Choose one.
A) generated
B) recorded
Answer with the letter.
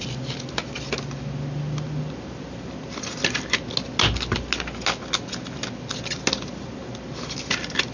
B